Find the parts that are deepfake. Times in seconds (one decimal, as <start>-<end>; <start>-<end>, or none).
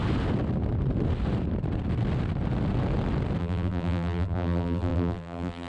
3.4-5.7